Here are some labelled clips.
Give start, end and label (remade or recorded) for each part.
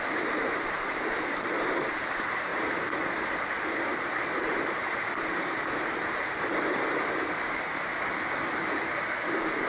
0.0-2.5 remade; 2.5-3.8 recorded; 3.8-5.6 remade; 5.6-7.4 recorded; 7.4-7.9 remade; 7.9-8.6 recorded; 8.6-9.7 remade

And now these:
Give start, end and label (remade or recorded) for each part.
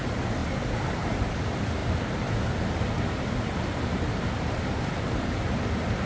0.0-6.1 recorded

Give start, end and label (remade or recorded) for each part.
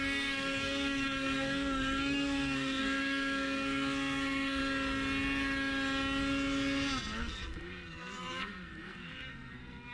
0.0-4.6 remade; 4.6-7.2 recorded; 7.2-9.9 remade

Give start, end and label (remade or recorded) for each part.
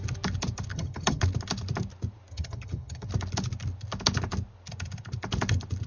0.0-0.7 recorded; 0.7-1.2 remade; 1.2-2.3 recorded; 2.3-3.1 remade; 3.1-5.9 recorded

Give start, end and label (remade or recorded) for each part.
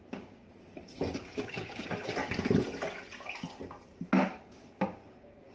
0.0-2.2 remade; 2.2-4.3 recorded; 4.3-5.5 remade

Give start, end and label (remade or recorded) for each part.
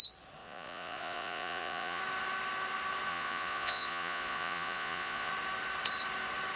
0.0-0.4 recorded; 0.4-2.0 remade; 2.0-3.1 recorded; 3.1-5.3 remade; 5.3-6.6 recorded